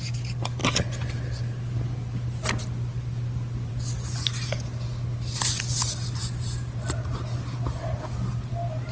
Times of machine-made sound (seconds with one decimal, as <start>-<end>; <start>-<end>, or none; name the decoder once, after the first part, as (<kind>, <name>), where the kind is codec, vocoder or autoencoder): none